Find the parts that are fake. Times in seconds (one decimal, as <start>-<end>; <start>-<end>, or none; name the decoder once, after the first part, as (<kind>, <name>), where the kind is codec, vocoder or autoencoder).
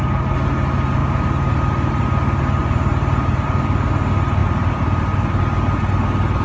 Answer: 1.0-2.1 (vocoder, BigVGAN v2); 2.6-3.6; 4.4-5.4